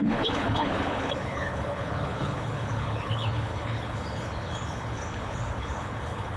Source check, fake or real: fake